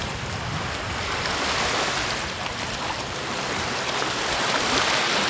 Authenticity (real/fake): real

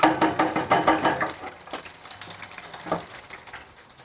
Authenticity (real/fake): real